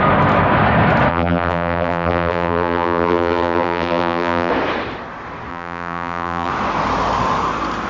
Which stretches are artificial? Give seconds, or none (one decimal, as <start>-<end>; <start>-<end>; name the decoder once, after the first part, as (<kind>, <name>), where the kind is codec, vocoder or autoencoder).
1.1-4.5 (vocoder, BigVGAN v2); 5.5-6.5